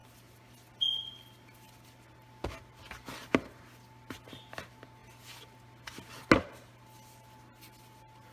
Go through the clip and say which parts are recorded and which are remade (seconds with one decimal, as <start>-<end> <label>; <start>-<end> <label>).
0.0-8.3 recorded